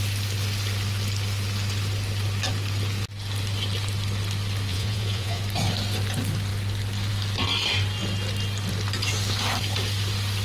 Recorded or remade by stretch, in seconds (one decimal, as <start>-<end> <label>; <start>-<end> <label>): 0.0-4.7 recorded; 4.7-5.4 remade; 5.4-10.4 recorded